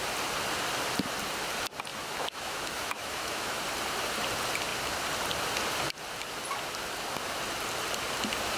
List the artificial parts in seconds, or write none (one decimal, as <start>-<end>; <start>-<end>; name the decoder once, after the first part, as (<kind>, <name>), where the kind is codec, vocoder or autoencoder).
1.9-3.6 (autoencoder, DAC-VAE)